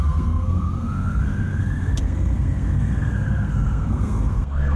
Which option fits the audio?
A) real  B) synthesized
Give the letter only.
B